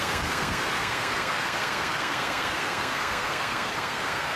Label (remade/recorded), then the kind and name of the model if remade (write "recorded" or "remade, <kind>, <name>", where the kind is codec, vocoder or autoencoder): remade, codec, SNAC